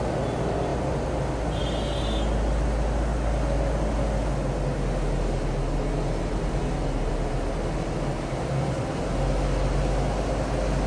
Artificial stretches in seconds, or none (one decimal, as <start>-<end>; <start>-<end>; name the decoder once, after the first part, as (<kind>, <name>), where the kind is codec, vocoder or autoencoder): none